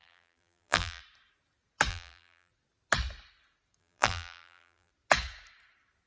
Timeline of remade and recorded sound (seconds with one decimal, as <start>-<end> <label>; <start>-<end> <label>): 0.0-1.0 remade; 1.0-1.9 recorded; 1.9-2.5 remade; 2.5-3.8 recorded; 3.8-4.9 remade; 4.9-6.1 recorded

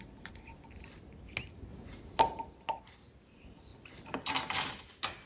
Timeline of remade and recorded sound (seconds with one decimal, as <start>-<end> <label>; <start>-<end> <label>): 0.0-5.3 recorded

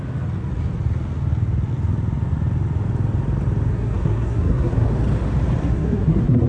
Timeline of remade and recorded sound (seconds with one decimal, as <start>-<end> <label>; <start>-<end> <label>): 0.0-3.7 recorded; 3.7-4.9 remade; 4.9-5.6 recorded; 5.6-6.5 remade

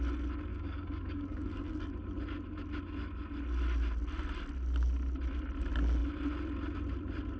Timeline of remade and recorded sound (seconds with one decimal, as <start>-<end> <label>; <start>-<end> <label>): 0.0-0.5 recorded; 0.5-1.9 remade; 1.9-7.4 recorded

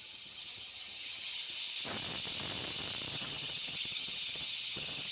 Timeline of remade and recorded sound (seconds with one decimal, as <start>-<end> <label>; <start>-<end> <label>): 0.0-1.4 remade; 1.4-3.1 recorded; 3.1-5.1 remade

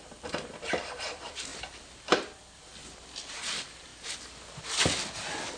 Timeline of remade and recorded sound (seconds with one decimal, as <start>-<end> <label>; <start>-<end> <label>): 0.0-5.6 recorded

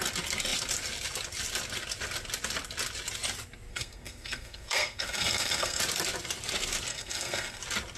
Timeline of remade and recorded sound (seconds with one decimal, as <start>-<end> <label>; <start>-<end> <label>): 0.0-3.7 recorded; 3.7-5.8 remade; 5.8-6.9 recorded; 6.9-7.6 remade; 7.6-8.0 recorded

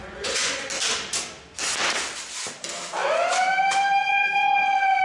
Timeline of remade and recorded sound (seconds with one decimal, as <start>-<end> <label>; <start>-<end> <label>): 0.0-0.7 remade; 0.7-4.0 recorded; 4.0-5.0 remade